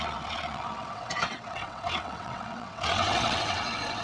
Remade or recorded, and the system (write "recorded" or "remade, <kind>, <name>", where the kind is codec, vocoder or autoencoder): remade, vocoder, WaveNeXt